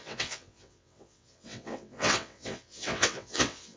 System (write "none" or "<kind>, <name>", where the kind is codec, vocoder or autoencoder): vocoder, WaveNeXt